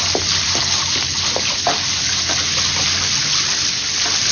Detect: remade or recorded recorded